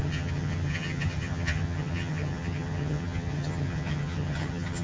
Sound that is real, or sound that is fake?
fake